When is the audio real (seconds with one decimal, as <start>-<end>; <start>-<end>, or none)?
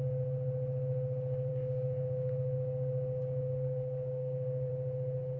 0.0-1.5; 4.7-5.4